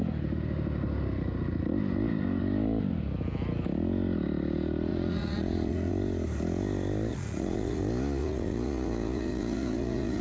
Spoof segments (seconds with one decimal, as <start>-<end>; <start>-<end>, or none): 4.9-5.9; 7.1-7.8; 8.2-10.2